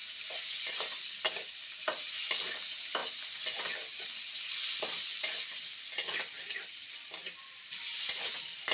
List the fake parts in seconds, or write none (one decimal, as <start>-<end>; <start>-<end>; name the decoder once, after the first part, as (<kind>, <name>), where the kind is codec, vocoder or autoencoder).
0.7-8.7 (vocoder, BigVGAN v2)